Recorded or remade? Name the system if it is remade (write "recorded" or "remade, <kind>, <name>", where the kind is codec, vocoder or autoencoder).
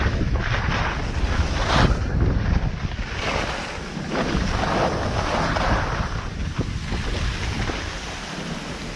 recorded